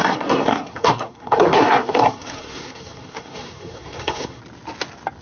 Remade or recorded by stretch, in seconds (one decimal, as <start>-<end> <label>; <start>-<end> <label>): 0.0-4.4 remade; 4.4-5.2 recorded

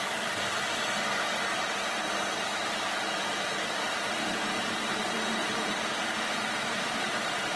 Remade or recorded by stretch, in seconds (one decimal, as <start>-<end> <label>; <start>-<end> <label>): 0.0-5.4 recorded; 5.4-5.9 remade; 5.9-7.6 recorded

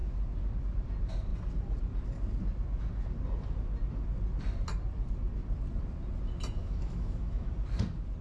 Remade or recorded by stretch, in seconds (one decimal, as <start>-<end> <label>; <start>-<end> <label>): 0.0-6.6 recorded; 6.6-7.5 remade; 7.5-8.2 recorded

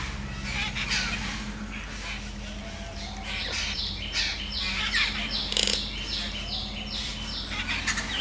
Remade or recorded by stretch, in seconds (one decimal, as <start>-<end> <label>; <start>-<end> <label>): 0.0-2.6 recorded; 2.6-4.2 remade; 4.2-7.0 recorded; 7.0-7.6 remade; 7.6-8.2 recorded

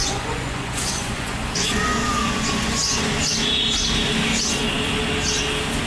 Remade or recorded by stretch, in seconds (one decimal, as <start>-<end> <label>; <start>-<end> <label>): 0.0-3.1 remade; 3.1-5.9 recorded

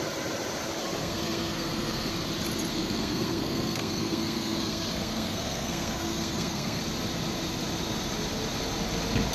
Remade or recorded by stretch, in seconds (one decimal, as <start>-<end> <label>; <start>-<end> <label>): 0.0-1.0 recorded; 1.0-2.1 remade; 2.1-2.7 recorded; 2.7-6.8 remade; 6.8-9.3 recorded